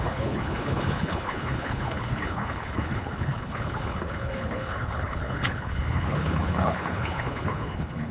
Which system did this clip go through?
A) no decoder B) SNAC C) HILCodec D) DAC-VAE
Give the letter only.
C